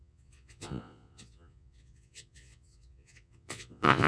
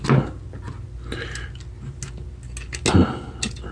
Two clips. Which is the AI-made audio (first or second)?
first